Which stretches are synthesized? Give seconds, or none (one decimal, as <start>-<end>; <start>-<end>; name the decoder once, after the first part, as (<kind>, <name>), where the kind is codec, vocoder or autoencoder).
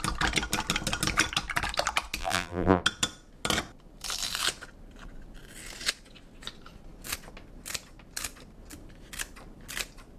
2.2-2.8 (vocoder, BigVGAN v2)